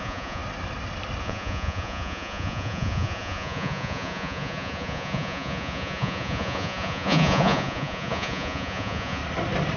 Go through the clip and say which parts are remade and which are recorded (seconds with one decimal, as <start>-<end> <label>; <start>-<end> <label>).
0.0-0.4 remade; 0.4-1.2 recorded; 1.2-9.2 remade; 9.2-9.8 recorded

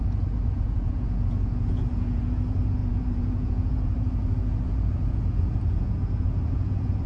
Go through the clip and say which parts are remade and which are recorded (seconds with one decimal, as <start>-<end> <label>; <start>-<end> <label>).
0.0-7.1 remade

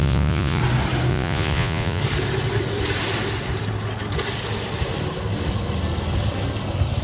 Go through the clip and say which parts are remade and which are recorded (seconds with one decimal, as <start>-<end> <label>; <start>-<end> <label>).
0.0-0.6 remade; 0.6-1.1 recorded; 1.1-2.0 remade; 2.0-7.0 recorded